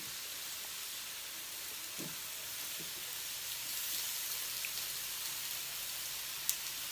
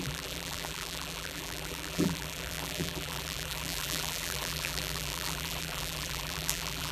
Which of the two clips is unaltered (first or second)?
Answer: first